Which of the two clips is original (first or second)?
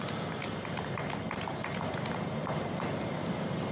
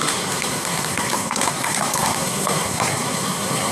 first